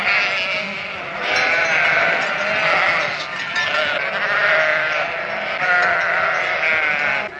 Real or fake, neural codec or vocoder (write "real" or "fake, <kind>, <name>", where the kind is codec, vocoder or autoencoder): real